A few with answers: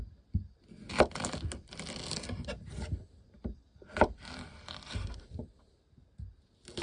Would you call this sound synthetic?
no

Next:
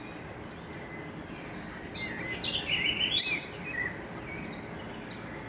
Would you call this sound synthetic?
no